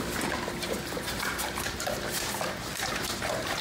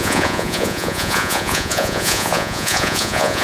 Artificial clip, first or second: second